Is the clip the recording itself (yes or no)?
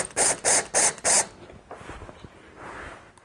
yes